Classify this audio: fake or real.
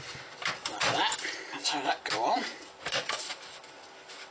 real